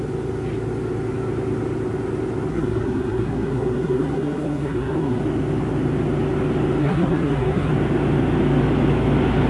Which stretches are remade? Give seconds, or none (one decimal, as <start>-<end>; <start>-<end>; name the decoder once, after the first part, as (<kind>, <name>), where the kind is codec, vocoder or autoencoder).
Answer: 2.5-5.2 (codec, SNAC); 6.8-7.7